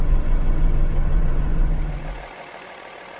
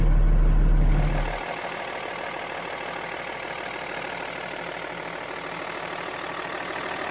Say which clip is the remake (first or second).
first